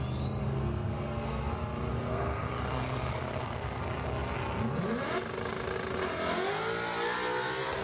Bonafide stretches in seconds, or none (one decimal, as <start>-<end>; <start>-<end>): 0.0-0.4; 1.5-1.9; 3.8-7.8